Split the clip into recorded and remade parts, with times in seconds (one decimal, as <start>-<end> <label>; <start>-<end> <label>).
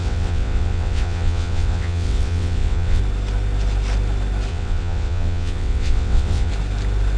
0.0-3.0 remade; 3.0-4.5 recorded; 4.5-6.5 remade; 6.5-7.2 recorded